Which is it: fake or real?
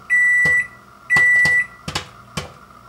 real